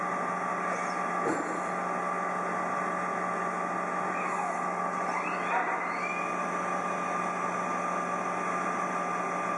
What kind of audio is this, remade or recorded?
recorded